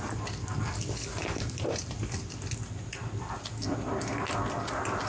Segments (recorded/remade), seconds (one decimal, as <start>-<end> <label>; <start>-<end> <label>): 0.0-5.1 recorded